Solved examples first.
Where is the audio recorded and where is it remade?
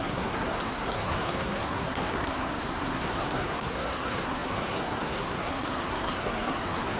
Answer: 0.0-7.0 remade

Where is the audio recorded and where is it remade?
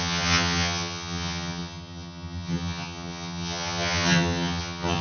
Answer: 0.0-5.0 remade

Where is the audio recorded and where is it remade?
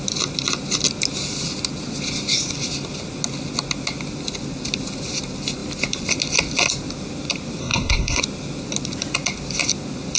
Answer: 0.0-7.6 recorded; 7.6-8.2 remade; 8.2-10.2 recorded